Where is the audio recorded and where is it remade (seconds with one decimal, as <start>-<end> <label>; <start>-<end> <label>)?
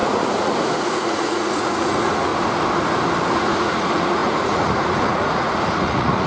0.0-2.3 remade; 2.3-3.3 recorded; 3.3-6.3 remade